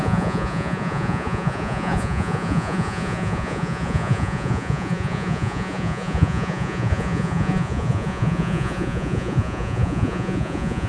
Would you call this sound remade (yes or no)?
yes